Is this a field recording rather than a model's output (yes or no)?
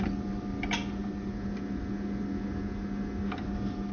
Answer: yes